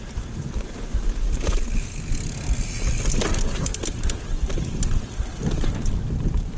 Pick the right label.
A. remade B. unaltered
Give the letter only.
B